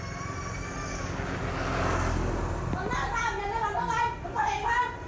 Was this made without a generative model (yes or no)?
yes